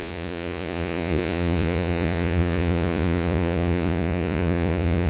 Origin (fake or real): fake